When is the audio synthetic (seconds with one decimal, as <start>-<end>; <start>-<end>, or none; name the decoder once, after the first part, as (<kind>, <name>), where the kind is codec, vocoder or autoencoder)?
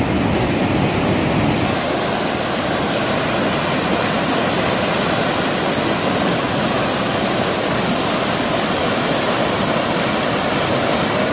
7.6-8.8 (codec, DAC)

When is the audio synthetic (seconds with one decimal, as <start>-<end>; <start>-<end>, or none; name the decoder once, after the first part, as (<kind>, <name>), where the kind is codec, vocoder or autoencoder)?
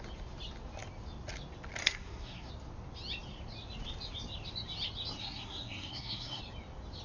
1.8-2.5 (codec, SNAC); 5.2-6.4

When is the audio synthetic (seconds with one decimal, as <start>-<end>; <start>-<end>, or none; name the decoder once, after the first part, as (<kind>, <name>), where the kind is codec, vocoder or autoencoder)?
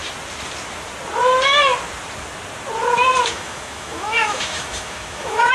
3.3-5.5 (autoencoder, DAC-VAE)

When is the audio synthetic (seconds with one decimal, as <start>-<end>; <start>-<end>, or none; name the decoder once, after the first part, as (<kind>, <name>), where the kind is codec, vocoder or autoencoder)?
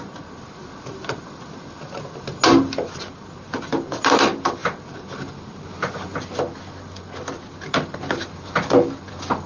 none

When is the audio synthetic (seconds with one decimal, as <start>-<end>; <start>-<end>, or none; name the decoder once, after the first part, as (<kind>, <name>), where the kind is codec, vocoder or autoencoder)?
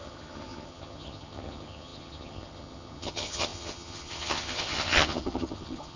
0.0-6.0 (vocoder, HiFi-GAN)